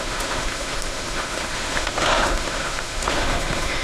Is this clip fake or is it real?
fake